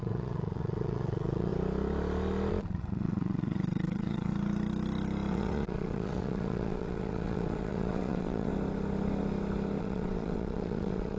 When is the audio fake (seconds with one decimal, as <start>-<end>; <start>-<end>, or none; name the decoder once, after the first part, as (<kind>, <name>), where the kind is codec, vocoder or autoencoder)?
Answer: 0.0-1.5 (vocoder, WaveNeXt); 2.5-4.3; 5.3-8.5; 9.8-11.2